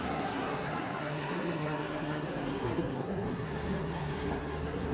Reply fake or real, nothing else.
fake